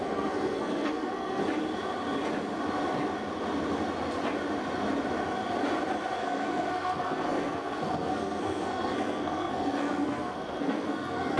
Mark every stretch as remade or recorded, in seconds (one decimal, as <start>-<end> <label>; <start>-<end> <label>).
0.0-1.4 remade; 1.4-6.2 recorded; 6.2-11.4 remade